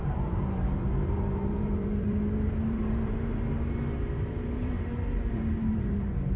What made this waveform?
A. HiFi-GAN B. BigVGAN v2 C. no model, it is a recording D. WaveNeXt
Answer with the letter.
B